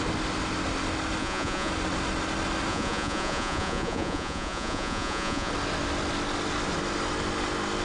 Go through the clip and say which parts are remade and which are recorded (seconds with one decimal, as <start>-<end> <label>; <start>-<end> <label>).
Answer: 0.0-1.2 recorded; 1.2-1.7 remade; 1.7-2.7 recorded; 2.7-5.5 remade; 5.5-7.8 recorded